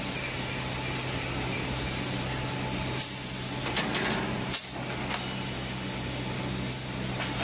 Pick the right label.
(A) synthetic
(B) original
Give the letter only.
B